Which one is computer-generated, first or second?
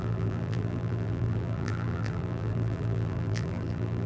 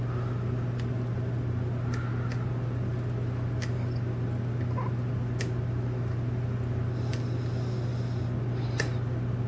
first